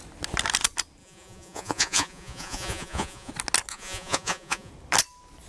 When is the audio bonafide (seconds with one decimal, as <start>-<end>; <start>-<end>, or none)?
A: 0.0-1.0; 3.3-3.7; 4.7-5.5

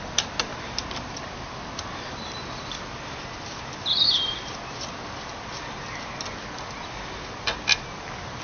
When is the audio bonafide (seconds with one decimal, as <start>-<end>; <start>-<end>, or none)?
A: 0.0-8.4

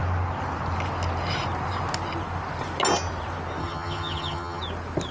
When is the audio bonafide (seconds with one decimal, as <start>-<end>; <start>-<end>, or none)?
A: 0.0-3.6; 4.6-5.1

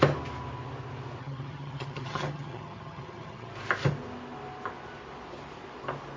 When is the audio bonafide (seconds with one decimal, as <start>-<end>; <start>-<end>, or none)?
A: 0.0-1.2; 3.5-6.2

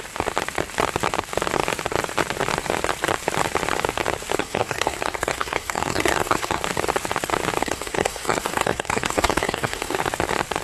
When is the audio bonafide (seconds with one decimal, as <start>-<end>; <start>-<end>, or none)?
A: 0.0-4.4; 6.6-7.6; 10.0-10.6

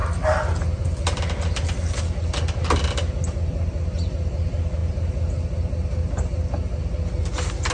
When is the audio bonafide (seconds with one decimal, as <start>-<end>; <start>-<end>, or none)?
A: 0.0-7.7

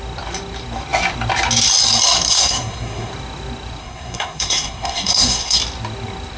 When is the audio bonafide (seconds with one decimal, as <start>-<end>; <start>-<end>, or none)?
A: 0.0-2.3; 3.1-3.8; 5.6-6.4